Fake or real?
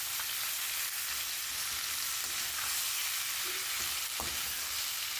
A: real